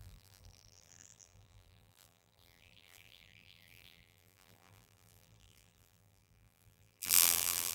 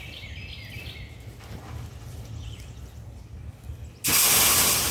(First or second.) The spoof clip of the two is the first